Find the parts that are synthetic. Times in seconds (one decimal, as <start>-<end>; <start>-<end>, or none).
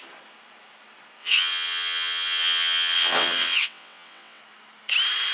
1.2-4.4